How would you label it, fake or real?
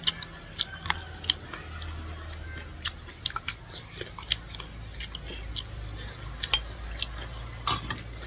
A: real